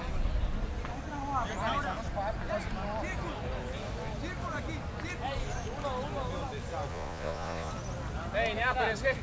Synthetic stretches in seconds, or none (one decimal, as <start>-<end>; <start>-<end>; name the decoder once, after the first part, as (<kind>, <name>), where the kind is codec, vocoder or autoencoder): 6.9-7.7 (vocoder, Vocos)